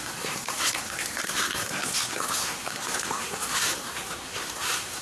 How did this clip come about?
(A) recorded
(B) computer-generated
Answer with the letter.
B